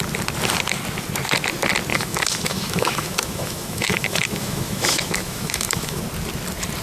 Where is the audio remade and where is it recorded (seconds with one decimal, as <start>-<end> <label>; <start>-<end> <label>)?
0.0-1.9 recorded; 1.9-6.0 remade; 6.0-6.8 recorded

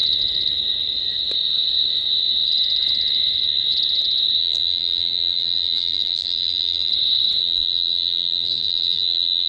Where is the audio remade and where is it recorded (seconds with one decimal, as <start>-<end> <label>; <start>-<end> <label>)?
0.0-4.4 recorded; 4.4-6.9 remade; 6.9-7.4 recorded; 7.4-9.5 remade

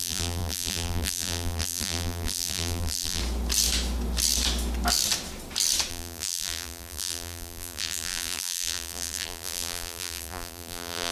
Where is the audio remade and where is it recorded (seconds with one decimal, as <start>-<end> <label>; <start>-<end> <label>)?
0.0-3.2 remade; 3.2-5.9 recorded; 5.9-11.1 remade

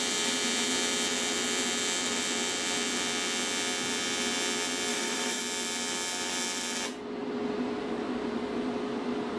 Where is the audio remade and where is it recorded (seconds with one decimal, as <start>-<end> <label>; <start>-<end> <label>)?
0.0-4.9 recorded; 4.9-5.4 remade; 5.4-9.4 recorded